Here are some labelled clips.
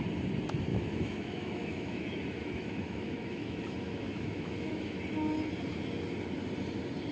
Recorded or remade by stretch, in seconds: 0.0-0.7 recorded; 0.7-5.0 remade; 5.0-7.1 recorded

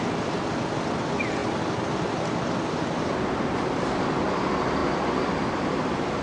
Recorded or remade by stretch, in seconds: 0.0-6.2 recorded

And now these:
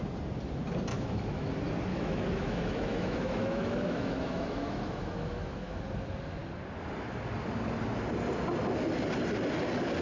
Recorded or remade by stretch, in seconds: 0.0-0.9 recorded; 0.9-1.5 remade; 1.5-1.9 recorded; 1.9-5.8 remade; 5.8-10.0 recorded

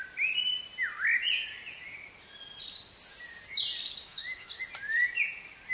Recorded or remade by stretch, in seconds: 0.0-4.0 recorded; 4.0-4.6 remade; 4.6-5.7 recorded

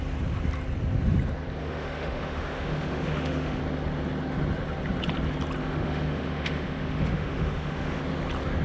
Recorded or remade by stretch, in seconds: 0.0-1.6 recorded; 1.6-3.6 remade; 3.6-5.6 recorded; 5.6-8.0 remade; 8.0-8.6 recorded

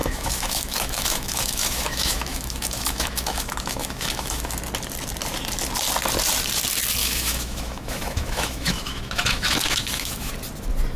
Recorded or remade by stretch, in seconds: 0.0-4.5 remade; 4.5-7.0 recorded; 7.0-10.3 remade; 10.3-11.0 recorded